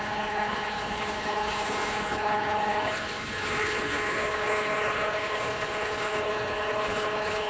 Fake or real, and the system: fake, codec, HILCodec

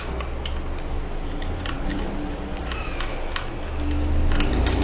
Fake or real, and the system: real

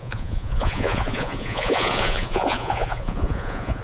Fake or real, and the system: fake, vocoder, Vocos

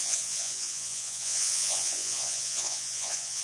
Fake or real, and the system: fake, vocoder, Vocos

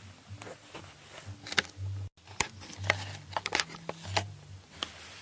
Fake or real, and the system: real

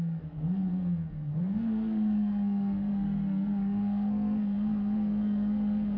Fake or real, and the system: fake, codec, SNAC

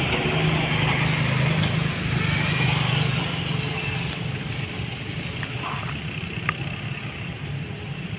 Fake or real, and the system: real